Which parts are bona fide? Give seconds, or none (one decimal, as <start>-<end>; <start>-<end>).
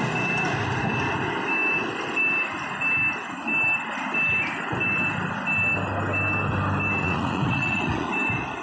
0.0-7.0; 8.1-8.6